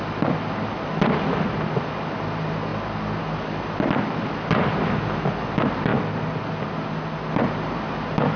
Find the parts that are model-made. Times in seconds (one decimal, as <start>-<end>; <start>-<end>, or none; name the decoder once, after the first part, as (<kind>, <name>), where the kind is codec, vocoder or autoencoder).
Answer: none